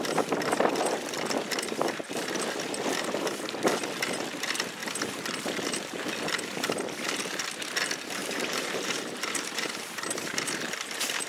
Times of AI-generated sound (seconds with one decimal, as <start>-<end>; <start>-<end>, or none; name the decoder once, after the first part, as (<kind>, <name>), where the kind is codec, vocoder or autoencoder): 8.2-10.6 (vocoder, BigVGAN v2)